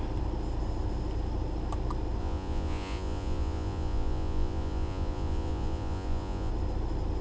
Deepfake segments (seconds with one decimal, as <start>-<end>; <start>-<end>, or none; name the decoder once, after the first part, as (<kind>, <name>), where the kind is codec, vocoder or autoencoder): 2.2-6.5 (vocoder, Vocos)